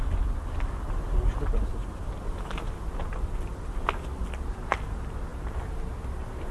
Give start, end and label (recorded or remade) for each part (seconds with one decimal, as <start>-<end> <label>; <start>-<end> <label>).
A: 0.0-6.5 recorded